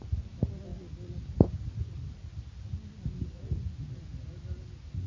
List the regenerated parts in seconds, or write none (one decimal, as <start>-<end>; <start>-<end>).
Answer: none

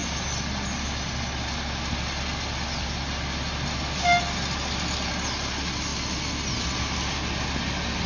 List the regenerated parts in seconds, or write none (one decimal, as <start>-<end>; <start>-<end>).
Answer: none